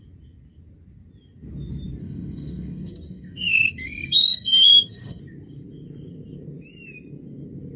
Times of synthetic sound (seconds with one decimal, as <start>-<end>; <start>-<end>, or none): 2.0-5.2